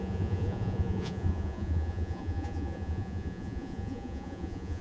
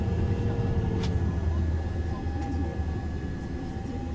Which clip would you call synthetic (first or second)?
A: first